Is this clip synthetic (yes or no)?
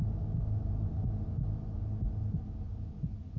no